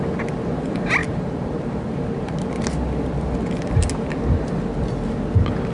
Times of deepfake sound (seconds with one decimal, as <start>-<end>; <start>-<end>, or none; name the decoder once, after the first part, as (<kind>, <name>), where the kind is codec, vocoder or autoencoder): 1.0-2.5 (vocoder, BigVGAN v2)